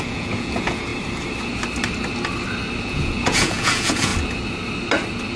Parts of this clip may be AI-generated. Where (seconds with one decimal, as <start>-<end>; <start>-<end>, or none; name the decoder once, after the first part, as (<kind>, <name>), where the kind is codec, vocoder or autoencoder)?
0.0-0.9 (vocoder, Vocos); 2.8-4.1